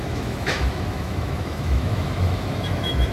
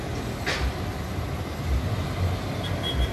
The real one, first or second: second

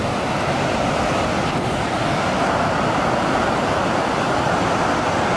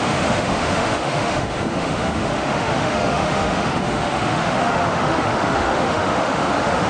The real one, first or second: first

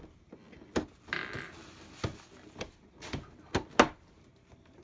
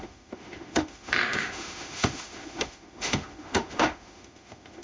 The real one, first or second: first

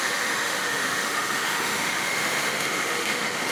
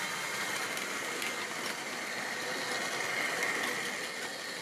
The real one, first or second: second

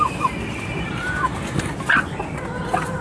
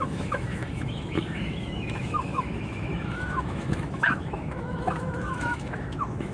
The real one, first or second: first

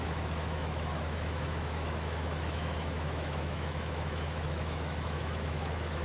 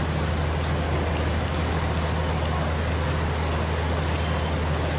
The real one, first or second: second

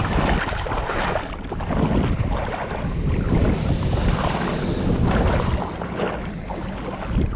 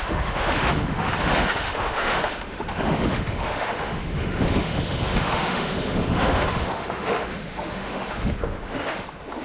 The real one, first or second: first